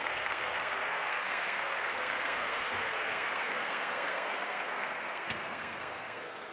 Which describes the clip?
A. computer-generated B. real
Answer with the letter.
A